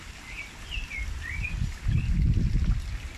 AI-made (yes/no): no